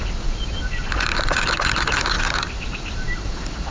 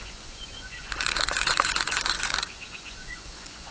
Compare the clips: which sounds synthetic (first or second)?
second